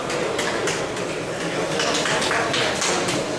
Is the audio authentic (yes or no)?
yes